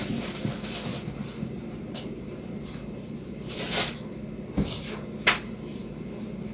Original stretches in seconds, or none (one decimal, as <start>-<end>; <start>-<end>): 0.0-0.9; 3.4-6.5